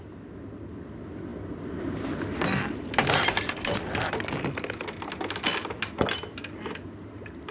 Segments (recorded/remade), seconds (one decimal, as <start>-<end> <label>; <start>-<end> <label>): 0.0-7.5 recorded